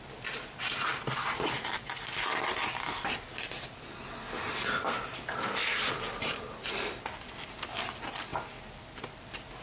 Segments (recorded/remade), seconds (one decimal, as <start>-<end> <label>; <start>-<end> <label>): 0.0-9.6 recorded